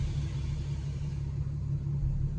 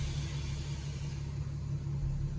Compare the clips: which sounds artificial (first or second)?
first